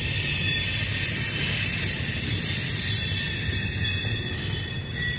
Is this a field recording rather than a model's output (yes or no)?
yes